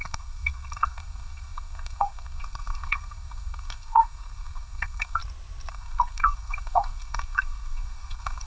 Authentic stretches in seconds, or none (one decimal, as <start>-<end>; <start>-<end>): 5.2-5.7